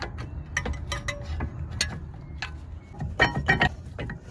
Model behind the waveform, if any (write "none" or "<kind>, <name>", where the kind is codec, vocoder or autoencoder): none